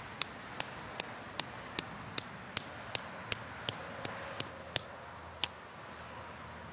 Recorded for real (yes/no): yes